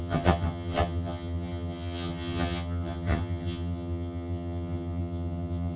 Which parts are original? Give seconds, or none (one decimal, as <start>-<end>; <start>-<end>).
none